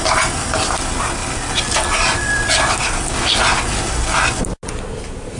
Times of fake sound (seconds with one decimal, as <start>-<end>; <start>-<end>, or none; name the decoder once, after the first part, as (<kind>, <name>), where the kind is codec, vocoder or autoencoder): none